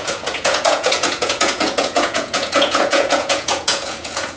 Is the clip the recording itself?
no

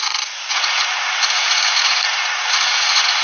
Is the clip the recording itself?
no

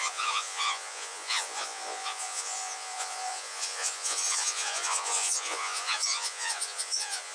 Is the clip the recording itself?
no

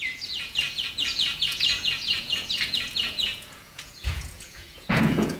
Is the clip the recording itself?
no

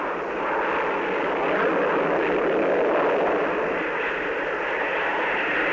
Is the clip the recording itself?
yes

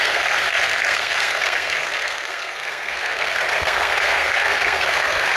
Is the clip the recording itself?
no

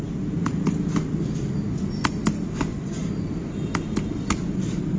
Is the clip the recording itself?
yes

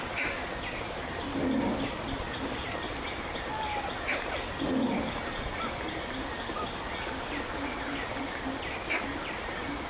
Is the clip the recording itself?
no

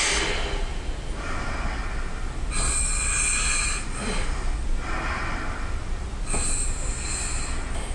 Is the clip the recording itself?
yes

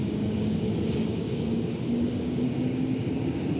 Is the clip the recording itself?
no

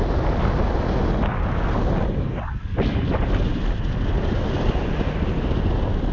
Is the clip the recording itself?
yes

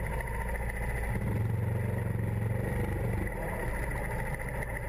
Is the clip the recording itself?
yes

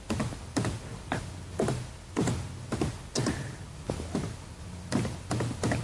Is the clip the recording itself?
yes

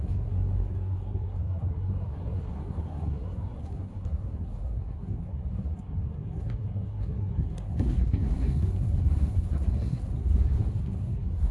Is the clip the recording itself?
no